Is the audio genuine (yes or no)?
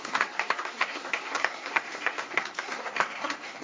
no